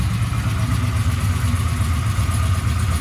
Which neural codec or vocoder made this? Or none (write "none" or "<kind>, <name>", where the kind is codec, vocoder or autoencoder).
none